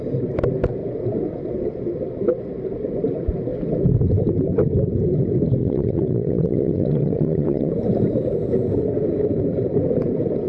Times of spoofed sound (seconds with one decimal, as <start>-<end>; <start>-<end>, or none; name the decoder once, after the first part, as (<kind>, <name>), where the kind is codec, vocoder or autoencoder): 5.6-7.7 (vocoder, Vocos)